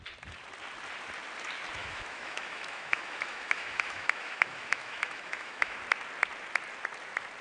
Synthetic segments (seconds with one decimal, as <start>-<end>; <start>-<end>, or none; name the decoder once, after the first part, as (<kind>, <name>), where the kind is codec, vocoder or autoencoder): 1.8-5.8 (autoencoder, DAC-VAE)